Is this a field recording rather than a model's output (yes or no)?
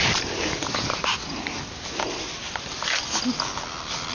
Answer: yes